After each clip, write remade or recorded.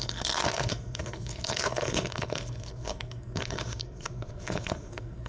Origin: remade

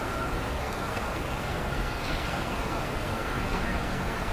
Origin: remade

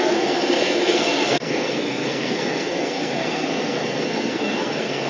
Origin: remade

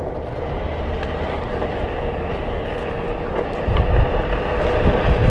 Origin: recorded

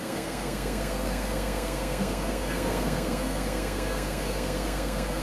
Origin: remade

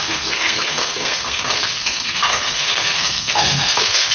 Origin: remade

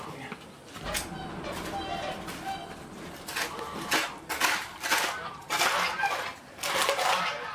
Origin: recorded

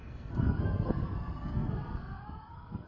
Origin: remade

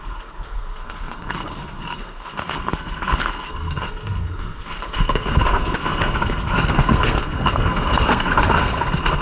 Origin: remade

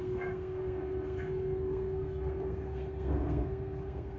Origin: remade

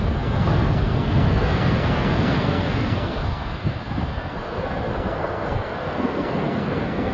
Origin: remade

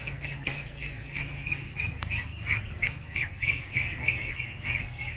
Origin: remade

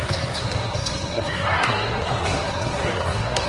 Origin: remade